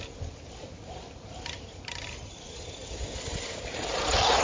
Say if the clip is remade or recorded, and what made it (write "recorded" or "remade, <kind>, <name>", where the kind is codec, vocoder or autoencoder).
recorded